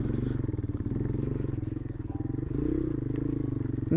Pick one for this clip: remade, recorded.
recorded